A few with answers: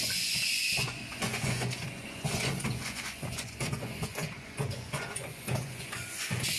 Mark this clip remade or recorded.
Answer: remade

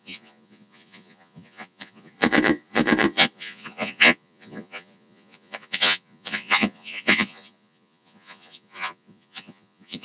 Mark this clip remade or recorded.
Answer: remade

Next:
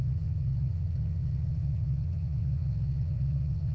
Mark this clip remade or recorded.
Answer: remade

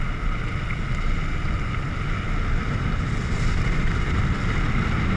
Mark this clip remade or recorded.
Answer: recorded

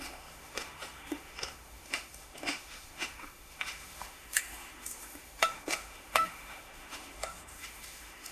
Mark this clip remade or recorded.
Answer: remade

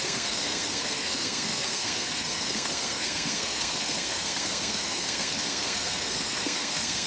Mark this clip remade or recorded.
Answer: remade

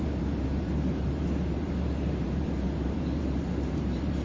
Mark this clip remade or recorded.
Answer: remade